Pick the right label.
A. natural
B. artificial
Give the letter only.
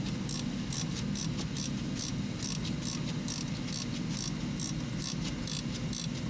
A